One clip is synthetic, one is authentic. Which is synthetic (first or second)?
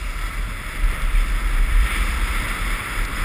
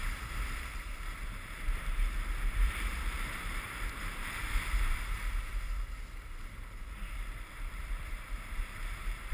second